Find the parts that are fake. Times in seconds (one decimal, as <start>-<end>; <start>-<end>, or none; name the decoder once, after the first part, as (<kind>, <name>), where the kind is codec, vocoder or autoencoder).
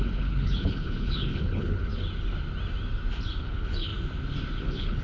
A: 0.0-1.9 (codec, HILCodec); 3.4-3.9; 4.6-5.0